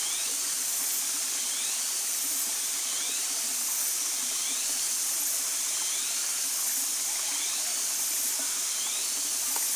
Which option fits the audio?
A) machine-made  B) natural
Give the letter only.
B